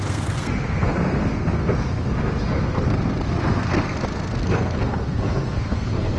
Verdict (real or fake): fake